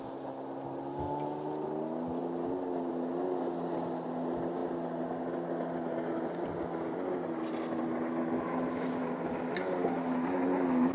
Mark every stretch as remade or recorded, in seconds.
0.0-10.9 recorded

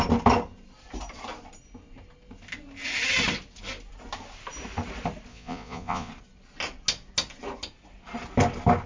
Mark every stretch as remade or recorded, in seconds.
0.0-5.3 recorded; 5.3-6.1 remade; 6.1-8.9 recorded

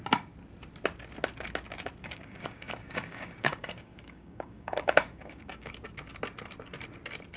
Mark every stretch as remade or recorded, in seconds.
0.0-2.0 recorded; 2.0-5.7 remade; 5.7-7.4 recorded

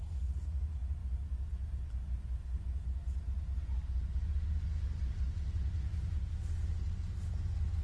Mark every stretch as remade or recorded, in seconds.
0.0-7.8 recorded

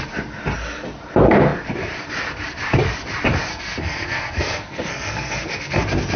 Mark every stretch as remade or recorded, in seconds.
0.0-3.5 recorded; 3.5-5.8 remade; 5.8-6.2 recorded